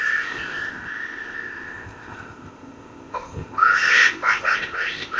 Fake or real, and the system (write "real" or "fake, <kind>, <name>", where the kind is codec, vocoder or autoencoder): fake, codec, ZipCodec